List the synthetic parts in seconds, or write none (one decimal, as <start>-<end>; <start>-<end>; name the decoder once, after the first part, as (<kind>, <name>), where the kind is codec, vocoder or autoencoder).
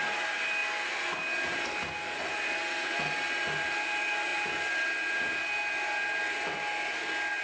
none